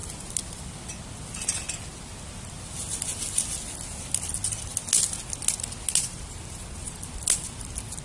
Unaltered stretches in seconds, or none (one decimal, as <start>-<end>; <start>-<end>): 0.0-8.0